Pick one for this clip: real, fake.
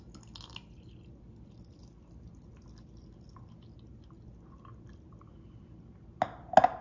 real